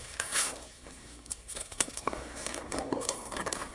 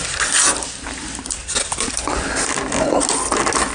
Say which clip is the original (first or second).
second